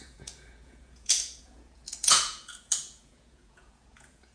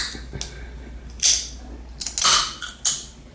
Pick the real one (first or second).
second